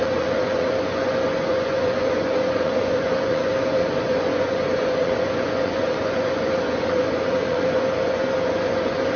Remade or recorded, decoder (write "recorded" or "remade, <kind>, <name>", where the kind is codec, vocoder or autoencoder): remade, vocoder, Vocos